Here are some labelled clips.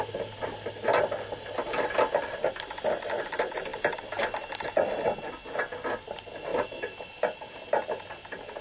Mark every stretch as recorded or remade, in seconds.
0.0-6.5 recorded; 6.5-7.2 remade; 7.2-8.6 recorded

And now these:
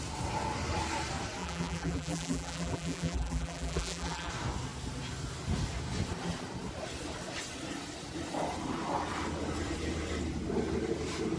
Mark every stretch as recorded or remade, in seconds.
0.0-1.4 recorded; 1.4-4.3 remade; 4.3-11.4 recorded

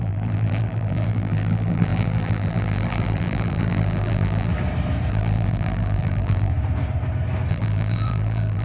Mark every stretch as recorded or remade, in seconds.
0.0-4.5 remade; 4.5-5.1 recorded; 5.1-6.5 remade; 6.5-7.5 recorded; 7.5-8.6 remade

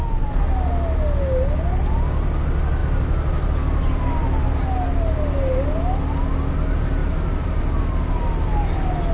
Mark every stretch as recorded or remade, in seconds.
0.0-7.0 recorded; 7.0-7.8 remade; 7.8-9.1 recorded

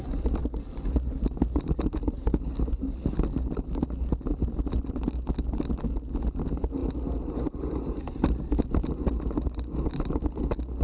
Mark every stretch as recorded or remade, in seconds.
0.0-10.8 recorded

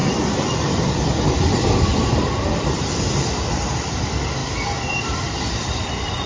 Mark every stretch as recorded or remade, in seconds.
0.0-1.9 remade; 1.9-3.4 recorded; 3.4-4.4 remade; 4.4-5.0 recorded; 5.0-6.3 remade

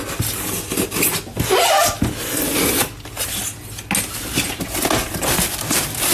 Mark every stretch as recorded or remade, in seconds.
0.0-6.1 recorded

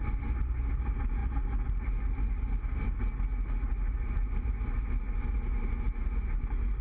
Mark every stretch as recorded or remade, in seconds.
0.0-6.8 recorded